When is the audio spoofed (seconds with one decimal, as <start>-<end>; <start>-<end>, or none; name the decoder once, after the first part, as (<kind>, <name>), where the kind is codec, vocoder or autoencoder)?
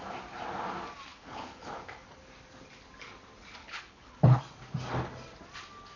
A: 1.1-1.8 (codec, HILCodec); 3.6-4.4